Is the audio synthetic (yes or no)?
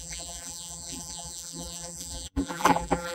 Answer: yes